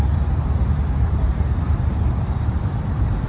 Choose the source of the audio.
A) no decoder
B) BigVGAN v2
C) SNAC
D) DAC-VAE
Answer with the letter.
B